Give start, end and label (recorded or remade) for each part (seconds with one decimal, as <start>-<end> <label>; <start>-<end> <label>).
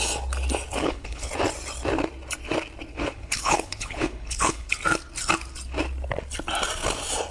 0.0-0.7 recorded; 0.7-1.3 remade; 1.3-2.9 recorded; 2.9-4.7 remade; 4.7-7.3 recorded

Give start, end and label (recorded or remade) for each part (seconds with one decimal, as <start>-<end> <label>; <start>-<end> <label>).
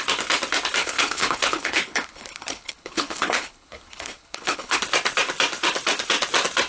0.0-0.8 recorded; 0.8-4.8 remade; 4.8-6.7 recorded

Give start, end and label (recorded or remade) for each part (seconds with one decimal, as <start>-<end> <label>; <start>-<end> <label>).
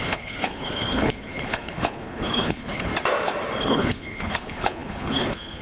0.0-2.9 remade; 2.9-3.6 recorded; 3.6-5.6 remade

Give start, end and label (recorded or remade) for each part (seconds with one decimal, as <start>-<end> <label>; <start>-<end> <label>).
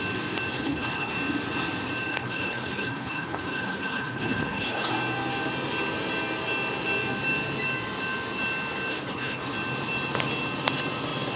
0.0-0.5 recorded; 0.5-1.1 remade; 1.1-2.1 recorded; 2.1-4.9 remade; 4.9-8.9 recorded; 8.9-9.4 remade; 9.4-11.4 recorded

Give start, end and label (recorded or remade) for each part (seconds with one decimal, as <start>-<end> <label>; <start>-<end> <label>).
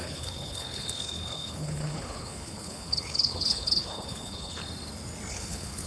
0.0-4.6 remade; 4.6-5.3 recorded; 5.3-5.9 remade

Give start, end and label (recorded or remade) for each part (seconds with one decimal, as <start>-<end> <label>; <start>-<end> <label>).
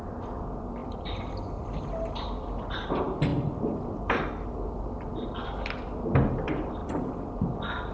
0.0-7.9 recorded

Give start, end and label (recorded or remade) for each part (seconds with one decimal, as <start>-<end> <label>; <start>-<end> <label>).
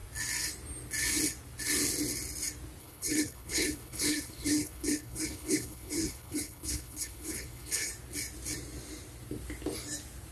0.0-2.8 recorded; 2.8-7.9 remade; 7.9-10.3 recorded